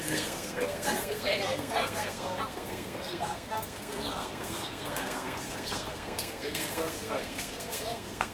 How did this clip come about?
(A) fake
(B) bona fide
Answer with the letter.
A